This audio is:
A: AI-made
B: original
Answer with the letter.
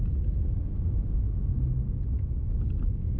B